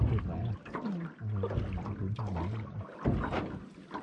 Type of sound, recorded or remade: recorded